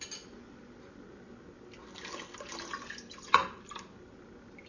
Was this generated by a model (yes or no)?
no